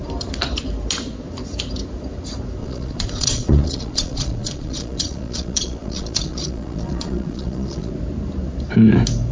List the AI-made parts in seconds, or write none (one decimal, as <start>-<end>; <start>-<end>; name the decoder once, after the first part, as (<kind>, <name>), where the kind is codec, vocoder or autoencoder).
2.6-7.9 (vocoder, Vocos)